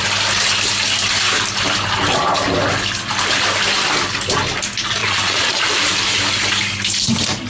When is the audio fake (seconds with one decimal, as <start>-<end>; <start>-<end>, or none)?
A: 5.0-5.6